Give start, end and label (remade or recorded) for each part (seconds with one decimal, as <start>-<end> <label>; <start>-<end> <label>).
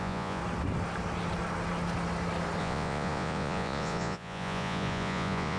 0.0-0.4 remade; 0.4-2.6 recorded; 2.6-5.6 remade